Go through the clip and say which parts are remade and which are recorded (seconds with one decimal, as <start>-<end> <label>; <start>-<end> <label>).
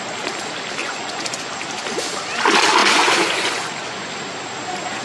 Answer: 0.0-0.8 recorded; 0.8-1.5 remade; 1.5-2.8 recorded; 2.8-4.1 remade; 4.1-5.0 recorded